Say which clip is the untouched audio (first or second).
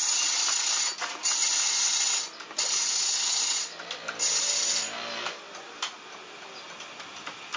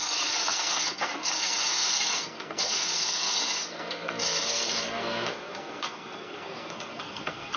first